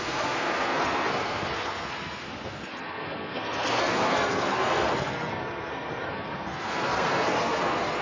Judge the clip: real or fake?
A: fake